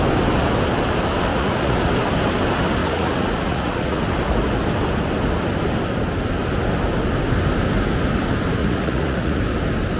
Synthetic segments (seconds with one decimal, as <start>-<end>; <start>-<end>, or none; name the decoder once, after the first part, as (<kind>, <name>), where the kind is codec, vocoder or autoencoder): 1.3-1.9 (vocoder, Vocos); 2.8-4.0; 8.6-9.4